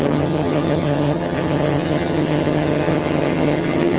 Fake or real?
fake